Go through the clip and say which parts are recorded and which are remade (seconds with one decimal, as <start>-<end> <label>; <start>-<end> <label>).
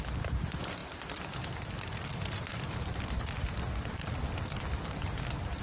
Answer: 0.0-5.6 recorded